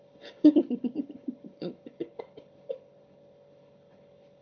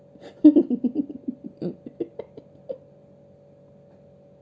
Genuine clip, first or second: second